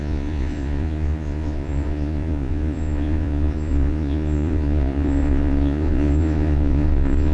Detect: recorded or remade remade